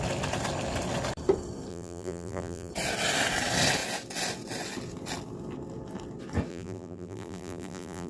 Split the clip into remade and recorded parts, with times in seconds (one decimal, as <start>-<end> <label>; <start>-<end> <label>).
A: 0.0-1.7 recorded; 1.7-2.7 remade; 2.7-6.5 recorded; 6.5-8.1 remade